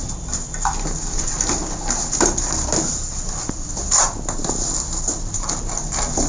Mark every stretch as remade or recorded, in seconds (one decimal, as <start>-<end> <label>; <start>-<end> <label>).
0.0-6.3 recorded